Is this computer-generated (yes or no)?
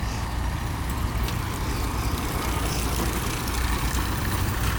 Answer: no